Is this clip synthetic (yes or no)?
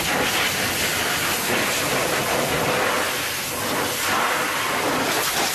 no